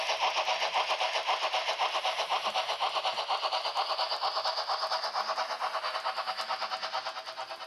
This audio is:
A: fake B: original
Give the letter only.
B